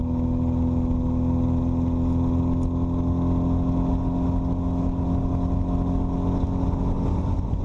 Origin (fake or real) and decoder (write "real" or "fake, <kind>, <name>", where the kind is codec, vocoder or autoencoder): real